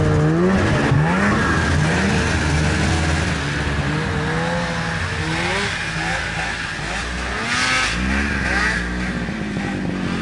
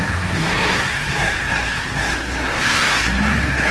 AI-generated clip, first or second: second